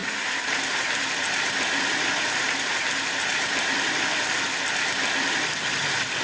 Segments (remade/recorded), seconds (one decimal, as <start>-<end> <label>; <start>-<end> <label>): 0.0-3.7 remade; 3.7-6.2 recorded